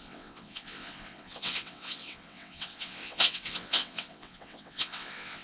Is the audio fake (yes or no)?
yes